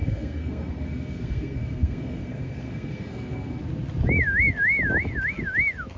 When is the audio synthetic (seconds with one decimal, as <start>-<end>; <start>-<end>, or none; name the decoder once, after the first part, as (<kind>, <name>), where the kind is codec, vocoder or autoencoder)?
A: 0.0-3.6 (codec, SNAC)